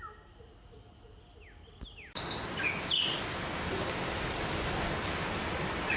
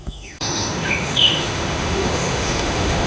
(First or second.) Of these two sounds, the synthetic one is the second